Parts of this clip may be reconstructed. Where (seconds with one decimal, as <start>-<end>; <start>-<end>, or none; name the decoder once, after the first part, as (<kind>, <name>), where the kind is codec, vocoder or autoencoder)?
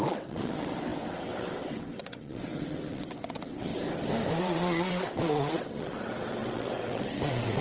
0.0-3.7 (vocoder, WaveNeXt); 4.4-7.6